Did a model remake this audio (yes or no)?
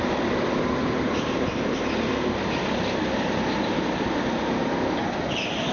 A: no